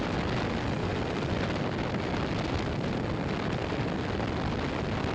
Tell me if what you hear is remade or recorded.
recorded